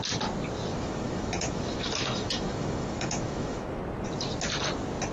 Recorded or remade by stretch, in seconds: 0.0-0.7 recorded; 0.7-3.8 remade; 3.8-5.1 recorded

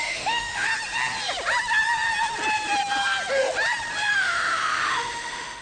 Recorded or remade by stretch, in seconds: 0.0-0.7 remade; 0.7-4.1 recorded; 4.1-5.6 remade

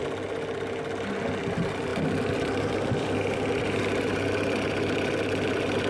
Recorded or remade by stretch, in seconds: 0.0-5.9 recorded

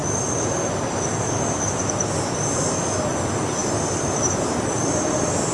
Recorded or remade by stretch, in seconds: 0.0-5.5 recorded

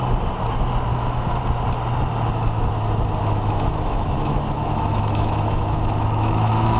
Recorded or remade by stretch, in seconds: 0.0-0.9 recorded; 0.9-1.4 remade; 1.4-3.2 recorded; 3.2-6.8 remade

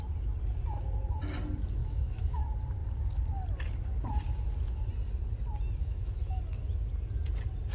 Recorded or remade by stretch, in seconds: 0.0-1.8 recorded; 1.8-2.4 remade; 2.4-5.8 recorded; 5.8-6.4 remade; 6.4-7.7 recorded

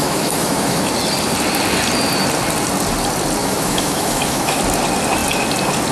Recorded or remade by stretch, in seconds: 0.0-0.9 remade; 0.9-3.4 recorded; 3.4-4.6 remade; 4.6-5.9 recorded

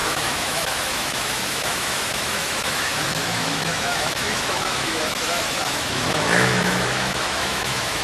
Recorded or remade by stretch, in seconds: 0.0-8.0 remade